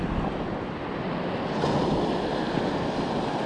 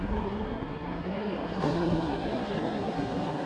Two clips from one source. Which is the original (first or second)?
first